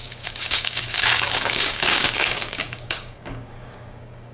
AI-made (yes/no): yes